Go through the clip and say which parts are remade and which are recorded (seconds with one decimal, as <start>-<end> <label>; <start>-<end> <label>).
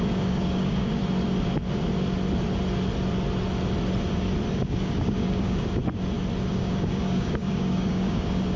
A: 0.0-1.0 remade; 1.0-4.5 recorded; 4.5-5.8 remade; 5.8-6.5 recorded; 6.5-8.6 remade